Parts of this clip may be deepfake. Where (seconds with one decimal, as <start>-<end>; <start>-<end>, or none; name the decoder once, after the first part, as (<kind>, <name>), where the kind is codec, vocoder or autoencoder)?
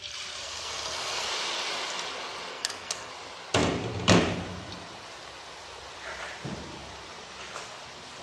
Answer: 0.4-1.3 (codec, SNAC); 2.5-3.1